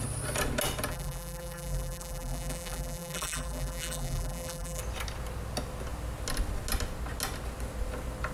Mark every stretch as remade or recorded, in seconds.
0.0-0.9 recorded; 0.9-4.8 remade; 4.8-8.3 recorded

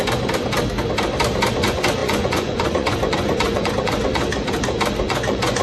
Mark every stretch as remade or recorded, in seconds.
0.0-1.5 recorded; 1.5-4.3 remade; 4.3-5.0 recorded; 5.0-5.6 remade